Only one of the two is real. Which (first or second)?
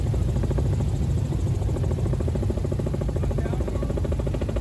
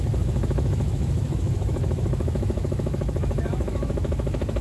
first